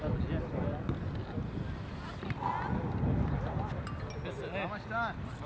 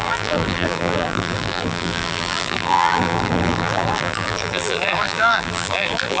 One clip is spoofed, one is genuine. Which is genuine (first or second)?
first